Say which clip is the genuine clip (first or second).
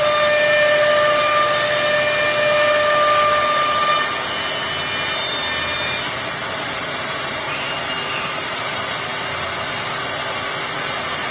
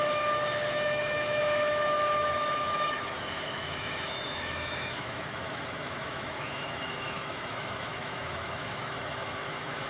first